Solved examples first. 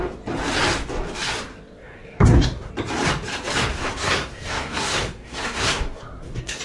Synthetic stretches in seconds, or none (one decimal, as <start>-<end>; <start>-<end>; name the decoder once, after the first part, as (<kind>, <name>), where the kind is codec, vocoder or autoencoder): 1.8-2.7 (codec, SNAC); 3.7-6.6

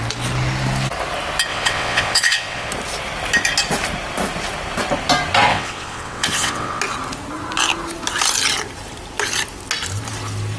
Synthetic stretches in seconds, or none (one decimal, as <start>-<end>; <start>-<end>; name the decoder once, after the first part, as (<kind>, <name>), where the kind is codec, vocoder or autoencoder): 1.5-2.7 (vocoder, WaveNeXt); 5.5-6.8

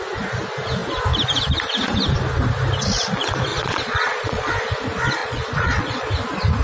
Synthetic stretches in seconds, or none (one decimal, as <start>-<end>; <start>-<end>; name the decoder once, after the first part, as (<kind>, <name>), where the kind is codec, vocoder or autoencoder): 3.5-4.5 (vocoder, Vocos); 5.2-6.1